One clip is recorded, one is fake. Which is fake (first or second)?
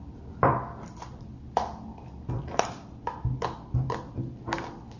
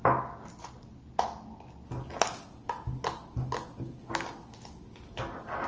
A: first